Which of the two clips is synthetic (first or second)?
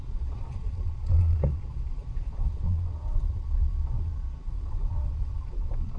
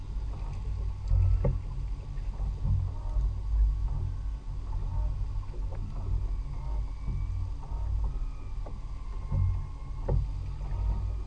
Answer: first